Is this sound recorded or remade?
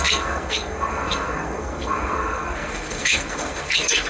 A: remade